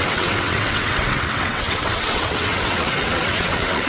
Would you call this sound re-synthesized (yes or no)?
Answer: yes